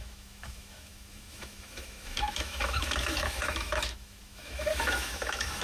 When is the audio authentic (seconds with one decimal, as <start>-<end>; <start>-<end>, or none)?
none